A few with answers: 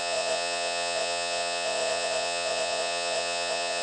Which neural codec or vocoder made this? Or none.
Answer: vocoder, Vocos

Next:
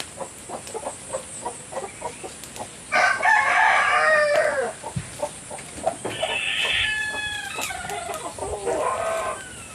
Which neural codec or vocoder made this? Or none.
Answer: none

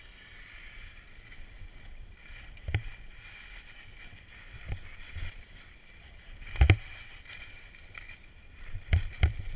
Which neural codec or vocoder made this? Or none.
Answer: none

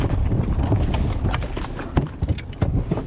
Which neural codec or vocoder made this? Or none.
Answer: none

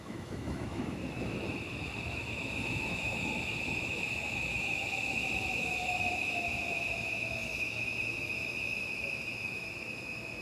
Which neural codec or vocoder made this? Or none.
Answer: autoencoder, DAC-VAE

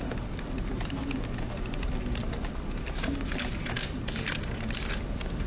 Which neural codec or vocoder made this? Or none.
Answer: none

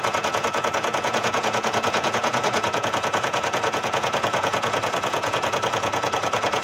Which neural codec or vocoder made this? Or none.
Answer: vocoder, Vocos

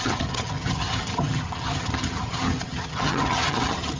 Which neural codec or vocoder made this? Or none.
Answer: vocoder, HiFi-GAN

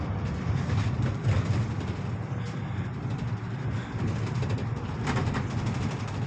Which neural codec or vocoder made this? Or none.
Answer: none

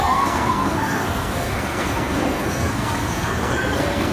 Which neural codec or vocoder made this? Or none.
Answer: codec, SNAC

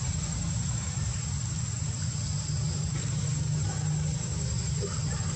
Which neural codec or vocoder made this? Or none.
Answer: none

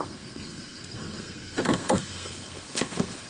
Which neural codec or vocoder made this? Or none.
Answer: codec, SNAC